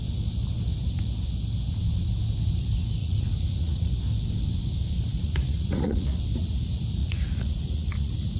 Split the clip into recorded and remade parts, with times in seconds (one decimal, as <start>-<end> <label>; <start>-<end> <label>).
0.0-3.0 recorded; 3.0-3.9 remade; 3.9-5.1 recorded; 5.1-6.2 remade; 6.2-7.0 recorded; 7.0-8.4 remade